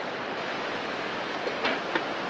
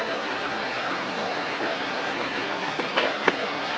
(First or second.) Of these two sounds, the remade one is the second